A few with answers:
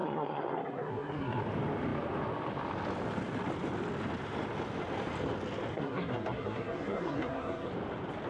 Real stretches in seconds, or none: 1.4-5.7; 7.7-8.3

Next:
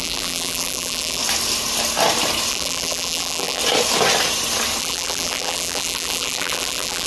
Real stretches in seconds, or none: 1.2-2.5; 3.6-4.8

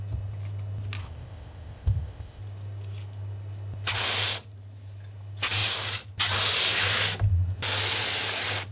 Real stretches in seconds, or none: 0.0-1.0; 2.4-8.7

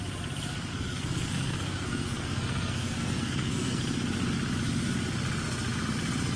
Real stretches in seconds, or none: 0.0-0.7; 3.8-6.4